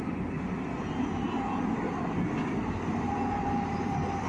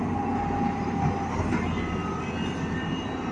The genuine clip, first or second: second